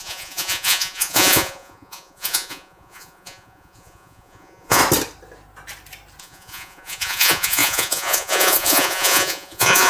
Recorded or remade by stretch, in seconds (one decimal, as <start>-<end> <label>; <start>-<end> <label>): 0.0-4.8 remade; 4.8-6.2 recorded; 6.2-9.9 remade